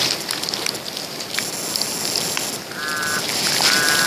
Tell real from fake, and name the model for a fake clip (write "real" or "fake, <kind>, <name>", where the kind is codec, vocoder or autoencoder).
real